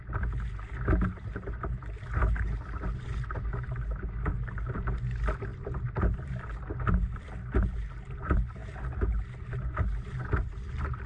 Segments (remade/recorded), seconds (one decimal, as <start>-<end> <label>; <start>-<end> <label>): 0.0-11.1 recorded